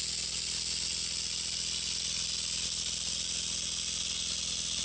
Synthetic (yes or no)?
no